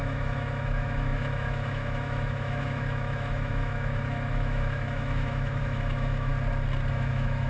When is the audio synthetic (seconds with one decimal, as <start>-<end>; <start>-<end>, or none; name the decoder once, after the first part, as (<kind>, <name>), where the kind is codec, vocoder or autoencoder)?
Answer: 0.0-6.3 (autoencoder, DAC-VAE); 6.9-7.5